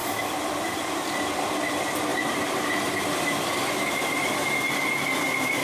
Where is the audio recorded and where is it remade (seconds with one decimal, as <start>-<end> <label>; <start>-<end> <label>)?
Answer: 0.0-2.1 recorded; 2.1-2.7 remade; 2.7-5.6 recorded